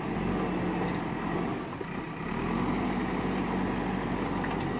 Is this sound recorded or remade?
recorded